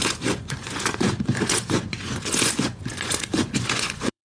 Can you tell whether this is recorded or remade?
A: remade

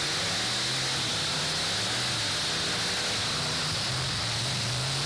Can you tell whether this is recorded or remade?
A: recorded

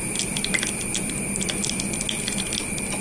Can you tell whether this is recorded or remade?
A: recorded